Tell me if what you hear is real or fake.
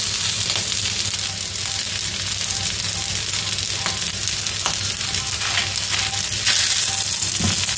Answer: real